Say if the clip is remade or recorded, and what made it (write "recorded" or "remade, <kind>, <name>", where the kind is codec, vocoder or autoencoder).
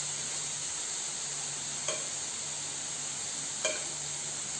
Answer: recorded